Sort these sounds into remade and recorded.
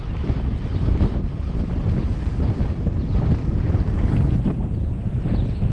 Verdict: recorded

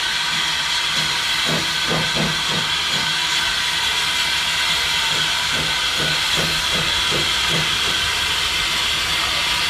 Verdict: recorded